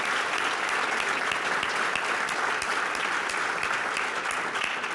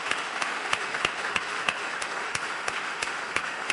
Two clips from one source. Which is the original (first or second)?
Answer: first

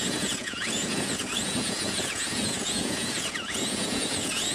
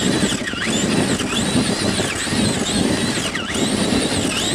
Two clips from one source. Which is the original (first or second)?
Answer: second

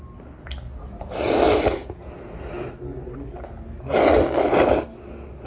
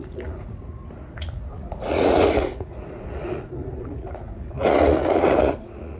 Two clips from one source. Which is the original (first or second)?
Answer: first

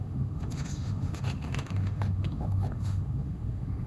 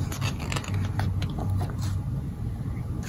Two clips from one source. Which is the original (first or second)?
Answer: second